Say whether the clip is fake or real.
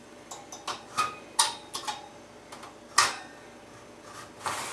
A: real